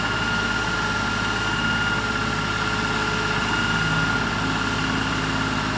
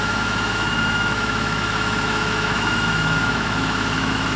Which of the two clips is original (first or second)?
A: first